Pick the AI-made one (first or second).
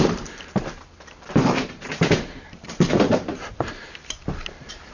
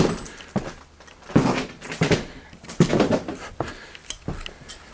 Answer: first